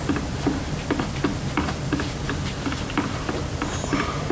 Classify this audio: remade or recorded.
recorded